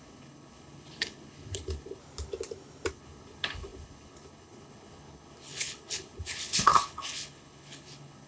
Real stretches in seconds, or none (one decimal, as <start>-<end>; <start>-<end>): 2.0-2.9